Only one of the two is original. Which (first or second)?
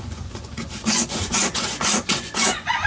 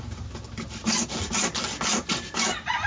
second